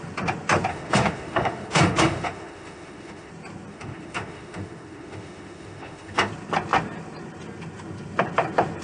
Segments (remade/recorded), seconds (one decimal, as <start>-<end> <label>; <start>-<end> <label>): 0.0-0.7 recorded; 0.7-3.3 remade; 3.3-3.7 recorded; 3.7-6.3 remade; 6.3-8.8 recorded

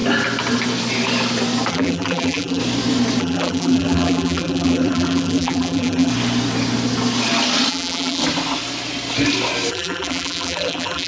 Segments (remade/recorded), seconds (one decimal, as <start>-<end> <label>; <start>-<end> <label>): 0.0-1.7 recorded; 1.7-2.6 remade; 2.6-3.2 recorded; 3.2-6.1 remade; 6.1-7.7 recorded; 7.7-8.2 remade; 8.2-9.7 recorded; 9.7-11.1 remade